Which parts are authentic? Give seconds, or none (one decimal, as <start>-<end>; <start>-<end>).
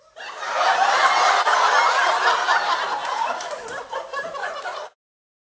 0.0-3.0; 3.6-4.4; 4.9-5.6